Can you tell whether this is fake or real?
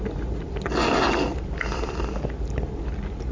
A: real